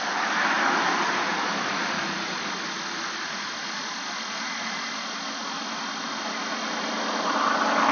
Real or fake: real